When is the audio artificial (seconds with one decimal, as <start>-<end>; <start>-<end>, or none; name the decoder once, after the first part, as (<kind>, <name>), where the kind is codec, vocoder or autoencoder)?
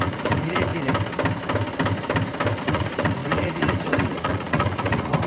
0.0-0.7 (vocoder, Vocos); 2.6-5.3